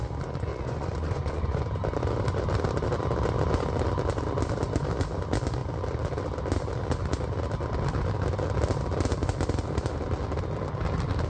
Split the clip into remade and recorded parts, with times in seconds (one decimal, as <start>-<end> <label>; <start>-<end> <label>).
0.0-0.5 recorded; 0.5-1.6 remade; 1.6-11.3 recorded